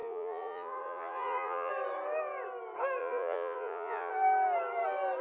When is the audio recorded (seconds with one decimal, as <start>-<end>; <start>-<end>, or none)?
1.7-3.0; 4.1-5.2